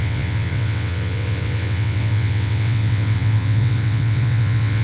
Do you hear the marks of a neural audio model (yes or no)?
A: yes